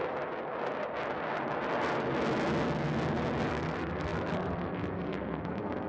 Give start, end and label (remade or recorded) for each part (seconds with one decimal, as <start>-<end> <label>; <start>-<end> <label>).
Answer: 0.0-3.5 recorded; 3.5-5.9 remade